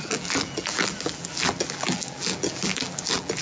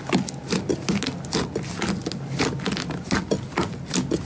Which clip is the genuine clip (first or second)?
second